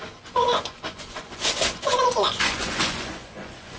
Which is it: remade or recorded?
remade